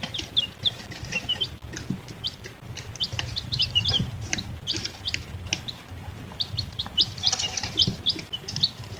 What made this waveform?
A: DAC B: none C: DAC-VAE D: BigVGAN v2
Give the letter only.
D